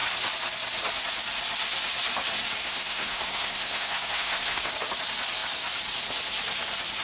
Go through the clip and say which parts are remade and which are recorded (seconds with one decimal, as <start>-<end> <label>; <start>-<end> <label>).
0.0-2.6 recorded; 2.6-4.7 remade; 4.7-7.0 recorded